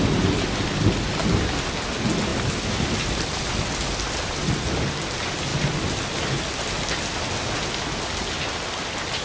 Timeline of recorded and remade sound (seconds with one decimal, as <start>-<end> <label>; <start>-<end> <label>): 0.0-2.3 recorded; 2.3-4.9 remade; 4.9-5.5 recorded; 5.5-6.7 remade; 6.7-9.2 recorded